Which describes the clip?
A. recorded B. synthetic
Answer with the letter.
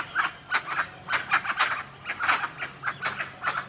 A